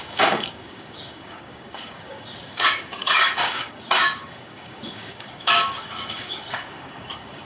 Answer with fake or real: fake